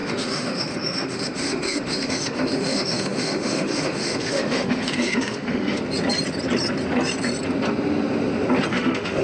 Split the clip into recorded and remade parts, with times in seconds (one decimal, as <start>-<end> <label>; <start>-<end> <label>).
0.0-5.8 remade; 5.8-8.7 recorded; 8.7-9.2 remade